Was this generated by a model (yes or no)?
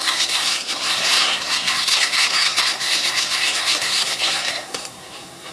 yes